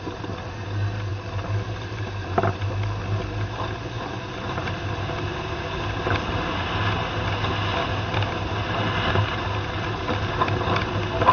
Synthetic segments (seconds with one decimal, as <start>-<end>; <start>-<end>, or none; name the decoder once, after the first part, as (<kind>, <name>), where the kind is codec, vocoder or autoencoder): none